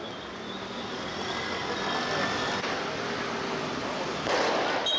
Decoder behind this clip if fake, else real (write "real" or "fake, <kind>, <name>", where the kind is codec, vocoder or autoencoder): real